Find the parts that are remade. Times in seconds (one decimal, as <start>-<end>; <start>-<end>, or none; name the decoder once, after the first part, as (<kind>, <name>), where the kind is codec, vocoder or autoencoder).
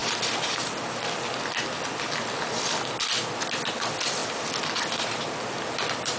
3.7-4.2 (vocoder, BigVGAN v2); 5.7-6.2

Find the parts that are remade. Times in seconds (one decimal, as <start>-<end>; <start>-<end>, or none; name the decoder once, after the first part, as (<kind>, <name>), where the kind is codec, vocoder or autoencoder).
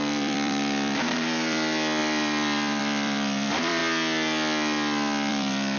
0.0-3.8 (vocoder, BigVGAN v2); 5.3-5.8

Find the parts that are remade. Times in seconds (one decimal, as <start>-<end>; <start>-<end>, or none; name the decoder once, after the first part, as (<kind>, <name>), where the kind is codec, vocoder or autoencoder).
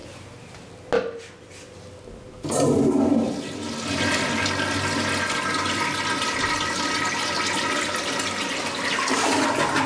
none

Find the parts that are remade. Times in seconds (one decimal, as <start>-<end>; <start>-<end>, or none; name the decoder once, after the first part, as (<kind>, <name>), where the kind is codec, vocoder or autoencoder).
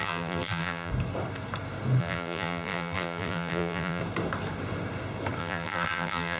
0.0-0.9 (vocoder, BigVGAN v2); 2.0-4.0; 5.4-6.4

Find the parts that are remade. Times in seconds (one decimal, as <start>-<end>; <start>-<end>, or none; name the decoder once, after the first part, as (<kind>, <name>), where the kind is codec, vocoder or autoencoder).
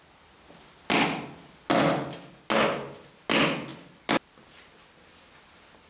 none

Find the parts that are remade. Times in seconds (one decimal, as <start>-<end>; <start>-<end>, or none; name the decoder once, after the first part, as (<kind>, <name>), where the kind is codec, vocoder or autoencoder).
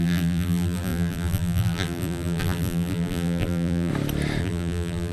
0.0-3.9 (vocoder, BigVGAN v2); 4.4-5.1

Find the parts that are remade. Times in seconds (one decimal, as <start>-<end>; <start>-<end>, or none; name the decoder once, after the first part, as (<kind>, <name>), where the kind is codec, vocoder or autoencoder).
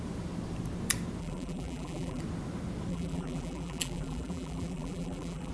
1.2-2.2 (vocoder, BigVGAN v2); 2.9-5.5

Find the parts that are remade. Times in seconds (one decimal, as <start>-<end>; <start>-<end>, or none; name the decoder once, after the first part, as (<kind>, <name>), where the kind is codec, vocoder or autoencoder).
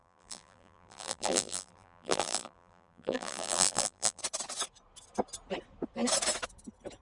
0.0-4.2 (vocoder, BigVGAN v2)